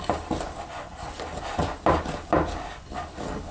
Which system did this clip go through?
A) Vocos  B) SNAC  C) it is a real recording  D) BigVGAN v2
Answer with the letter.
C